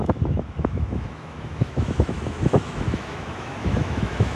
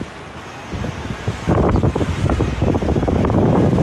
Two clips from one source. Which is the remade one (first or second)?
first